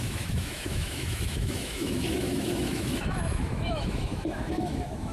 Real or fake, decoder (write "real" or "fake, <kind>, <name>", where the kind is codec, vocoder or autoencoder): fake, autoencoder, DAC-VAE